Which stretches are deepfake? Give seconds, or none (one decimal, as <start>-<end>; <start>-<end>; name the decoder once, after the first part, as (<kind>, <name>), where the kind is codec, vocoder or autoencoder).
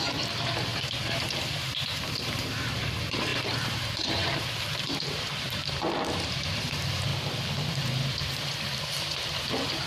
0.0-0.7 (vocoder, BigVGAN v2); 1.3-7.1; 7.7-9.9